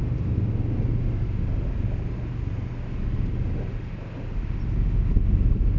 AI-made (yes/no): no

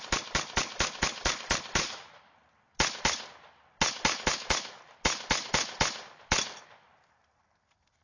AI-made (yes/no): no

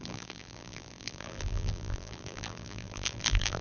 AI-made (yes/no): yes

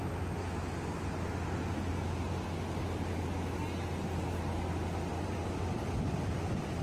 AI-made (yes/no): no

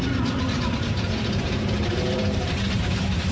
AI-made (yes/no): yes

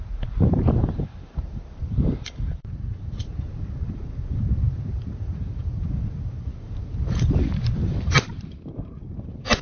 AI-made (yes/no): yes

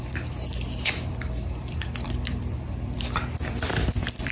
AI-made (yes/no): yes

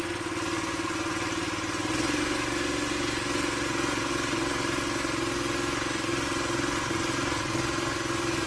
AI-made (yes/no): no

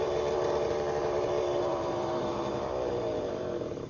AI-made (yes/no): yes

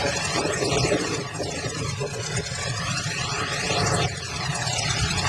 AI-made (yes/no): yes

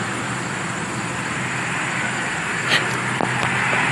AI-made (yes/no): no